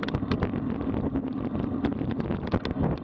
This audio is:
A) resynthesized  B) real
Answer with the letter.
B